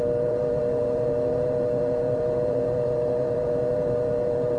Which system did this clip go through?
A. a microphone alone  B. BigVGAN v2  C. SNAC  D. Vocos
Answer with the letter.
B